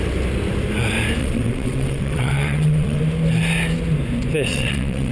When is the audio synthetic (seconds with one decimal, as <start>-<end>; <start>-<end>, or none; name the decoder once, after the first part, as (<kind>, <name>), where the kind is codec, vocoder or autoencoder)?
1.2-3.0 (vocoder, WaveNeXt); 4.5-5.1